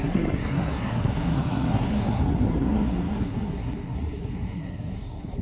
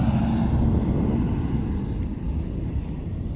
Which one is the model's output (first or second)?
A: first